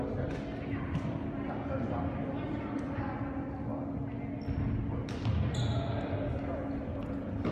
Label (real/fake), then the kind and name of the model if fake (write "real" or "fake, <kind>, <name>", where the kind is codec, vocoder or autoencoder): real